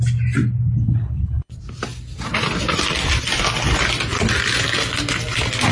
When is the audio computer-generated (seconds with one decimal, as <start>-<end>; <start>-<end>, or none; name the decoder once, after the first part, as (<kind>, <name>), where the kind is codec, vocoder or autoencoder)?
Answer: 0.8-1.5 (codec, HILCodec)